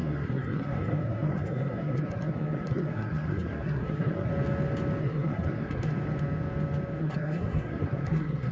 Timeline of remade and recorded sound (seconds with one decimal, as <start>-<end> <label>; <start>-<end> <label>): 0.0-4.3 remade; 4.3-5.0 recorded; 5.0-5.9 remade; 5.9-7.0 recorded; 7.0-8.5 remade